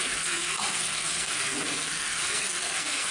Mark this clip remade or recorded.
remade